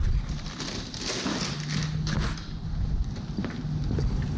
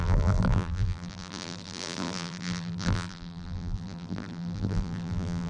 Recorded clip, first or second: first